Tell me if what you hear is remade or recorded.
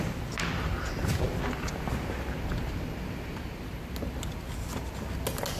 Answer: recorded